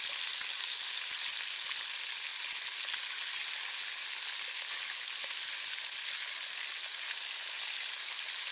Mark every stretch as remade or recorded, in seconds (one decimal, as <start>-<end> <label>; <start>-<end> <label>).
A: 0.0-8.5 recorded